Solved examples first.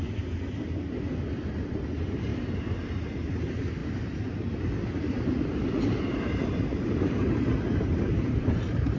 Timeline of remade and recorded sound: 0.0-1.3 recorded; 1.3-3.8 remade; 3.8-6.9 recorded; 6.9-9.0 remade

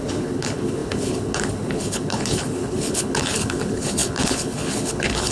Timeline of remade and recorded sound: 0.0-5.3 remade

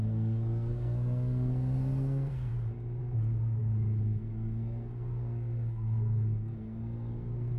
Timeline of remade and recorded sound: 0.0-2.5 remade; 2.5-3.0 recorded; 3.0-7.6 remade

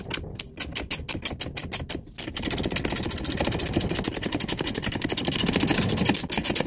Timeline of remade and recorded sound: 0.0-6.7 recorded

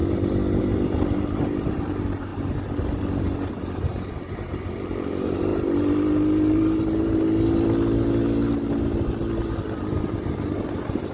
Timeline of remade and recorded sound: 0.0-0.6 recorded; 0.6-2.3 remade; 2.3-3.5 recorded; 3.5-5.5 remade; 5.5-10.6 recorded; 10.6-11.1 remade